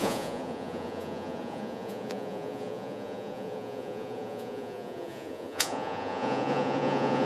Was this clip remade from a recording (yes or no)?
yes